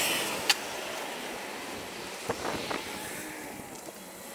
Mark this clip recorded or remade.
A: recorded